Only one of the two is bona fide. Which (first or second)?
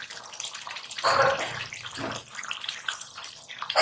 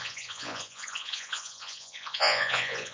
first